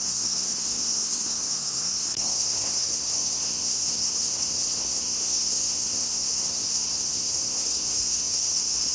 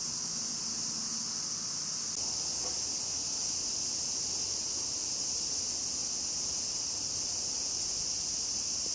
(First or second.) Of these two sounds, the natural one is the second